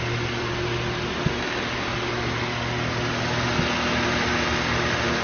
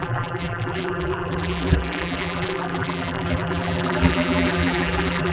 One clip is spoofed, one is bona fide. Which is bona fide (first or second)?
first